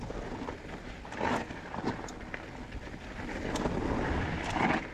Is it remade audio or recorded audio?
recorded